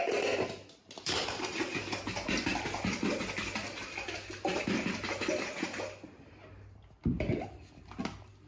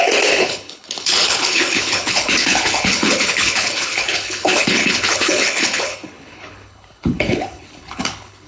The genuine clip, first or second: first